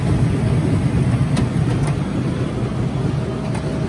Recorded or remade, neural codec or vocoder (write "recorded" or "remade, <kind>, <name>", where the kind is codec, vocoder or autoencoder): recorded